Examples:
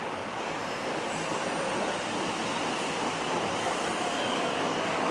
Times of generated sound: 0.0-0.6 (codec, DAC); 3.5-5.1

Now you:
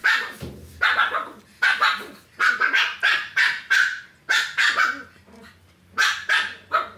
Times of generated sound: none

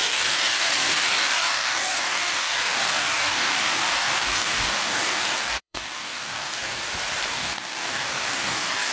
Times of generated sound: 0.0-6.8 (codec, DAC); 7.3-8.9

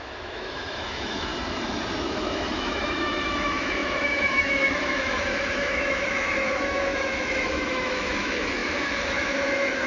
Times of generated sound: 0.0-1.3 (autoencoder, DAC-VAE); 2.0-9.9